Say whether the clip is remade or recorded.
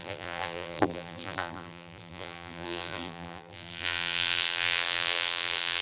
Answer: remade